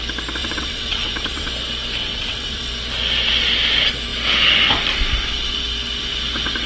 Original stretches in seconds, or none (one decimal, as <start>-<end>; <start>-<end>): 0.0-0.4; 1.5-2.0; 2.6-6.7